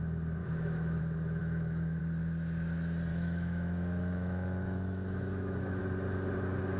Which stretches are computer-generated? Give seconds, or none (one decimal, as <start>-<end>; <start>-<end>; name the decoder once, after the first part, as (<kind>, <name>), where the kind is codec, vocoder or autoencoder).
0.4-1.0 (autoencoder, DAC-VAE); 1.4-2.0; 3.1-5.8